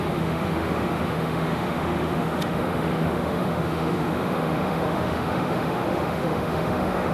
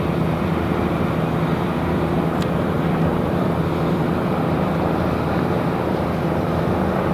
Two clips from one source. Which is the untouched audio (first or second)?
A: second